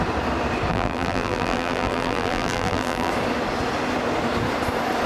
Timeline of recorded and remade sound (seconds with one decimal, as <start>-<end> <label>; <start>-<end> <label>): 0.0-0.7 recorded; 0.7-3.1 remade; 3.1-5.1 recorded